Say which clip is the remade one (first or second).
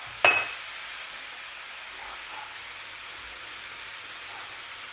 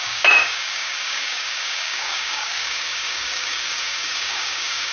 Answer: second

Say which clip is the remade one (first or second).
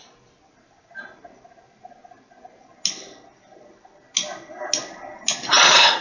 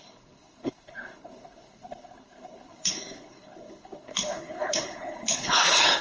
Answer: second